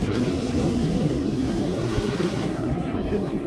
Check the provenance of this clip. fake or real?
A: fake